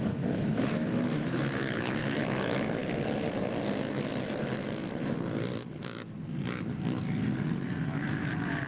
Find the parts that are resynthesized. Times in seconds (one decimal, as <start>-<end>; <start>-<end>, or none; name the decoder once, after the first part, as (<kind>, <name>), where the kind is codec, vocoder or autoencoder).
0.0-2.8 (autoencoder, DAC-VAE); 7.8-8.7